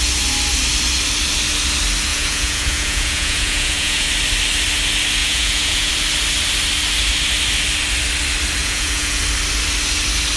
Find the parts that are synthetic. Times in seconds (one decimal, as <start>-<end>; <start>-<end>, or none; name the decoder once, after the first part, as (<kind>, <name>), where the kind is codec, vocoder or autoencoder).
2.1-4.1 (vocoder, Vocos); 5.2-5.9; 8.6-9.2